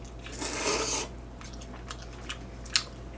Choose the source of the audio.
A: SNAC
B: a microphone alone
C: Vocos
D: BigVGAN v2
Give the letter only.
B